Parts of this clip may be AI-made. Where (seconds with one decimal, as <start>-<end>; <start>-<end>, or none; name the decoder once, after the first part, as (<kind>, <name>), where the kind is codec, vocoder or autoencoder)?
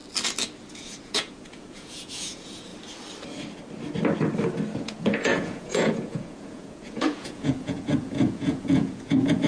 0.8-2.7 (vocoder, Vocos); 4.8-9.5